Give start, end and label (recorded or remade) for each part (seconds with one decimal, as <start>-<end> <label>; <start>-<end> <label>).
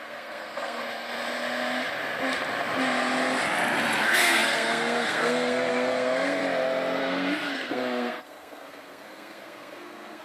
0.0-0.8 remade; 0.8-4.0 recorded; 4.0-6.4 remade; 6.4-7.0 recorded; 7.0-10.2 remade